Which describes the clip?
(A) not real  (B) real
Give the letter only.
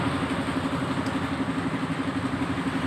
B